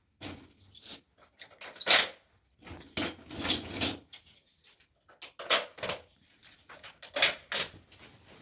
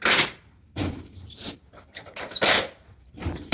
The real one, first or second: first